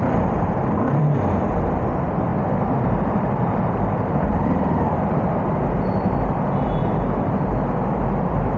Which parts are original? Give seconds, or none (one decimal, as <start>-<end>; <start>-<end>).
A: 1.0-2.3; 6.8-8.6